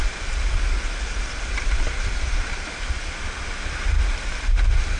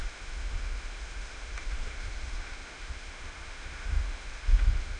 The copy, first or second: second